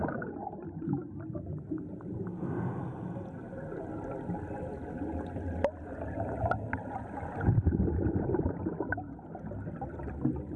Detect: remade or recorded recorded